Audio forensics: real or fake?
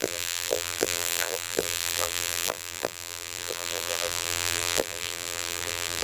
fake